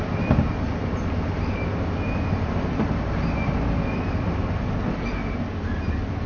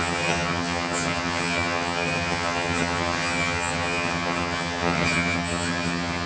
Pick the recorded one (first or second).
first